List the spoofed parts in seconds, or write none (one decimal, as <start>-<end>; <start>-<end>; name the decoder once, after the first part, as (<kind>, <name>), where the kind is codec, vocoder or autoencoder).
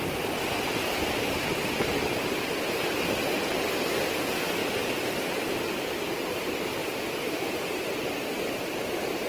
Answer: none